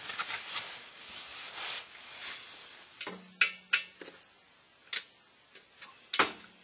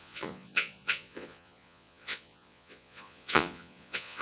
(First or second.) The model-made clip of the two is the second